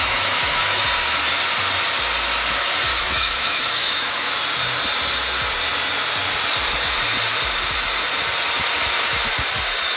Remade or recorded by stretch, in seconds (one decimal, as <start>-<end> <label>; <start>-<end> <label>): 0.0-0.8 remade; 0.8-2.9 recorded; 2.9-4.3 remade; 4.3-10.0 recorded